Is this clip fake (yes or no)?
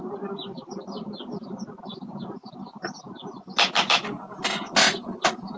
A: no